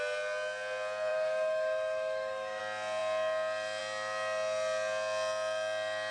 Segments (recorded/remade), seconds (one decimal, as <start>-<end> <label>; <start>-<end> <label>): 0.0-1.1 recorded; 1.1-2.6 remade; 2.6-6.1 recorded